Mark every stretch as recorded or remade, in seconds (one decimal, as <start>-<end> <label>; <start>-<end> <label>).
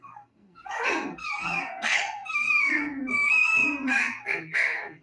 0.0-5.0 remade